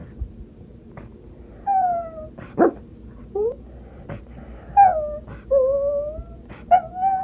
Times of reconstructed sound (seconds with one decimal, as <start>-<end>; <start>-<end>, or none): 0.0-4.3